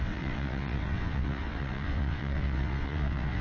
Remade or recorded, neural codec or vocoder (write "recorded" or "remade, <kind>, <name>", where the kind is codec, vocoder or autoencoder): remade, vocoder, WaveNeXt